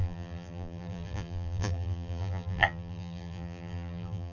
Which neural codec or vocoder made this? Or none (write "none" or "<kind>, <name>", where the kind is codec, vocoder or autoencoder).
vocoder, BigVGAN v2